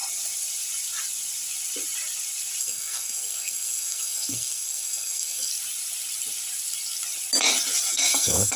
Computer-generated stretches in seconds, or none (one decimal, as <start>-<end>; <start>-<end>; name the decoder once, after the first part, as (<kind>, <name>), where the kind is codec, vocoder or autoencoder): 2.6-5.5 (codec, SNAC); 7.9-8.6